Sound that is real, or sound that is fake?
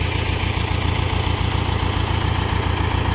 real